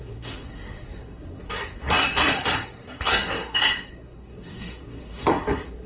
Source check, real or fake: fake